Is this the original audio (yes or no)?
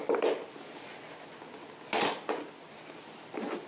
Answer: yes